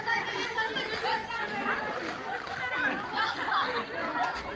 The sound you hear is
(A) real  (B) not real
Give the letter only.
A